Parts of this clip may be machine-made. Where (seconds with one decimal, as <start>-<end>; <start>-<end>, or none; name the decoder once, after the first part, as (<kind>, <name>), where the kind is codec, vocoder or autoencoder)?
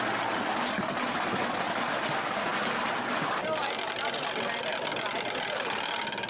none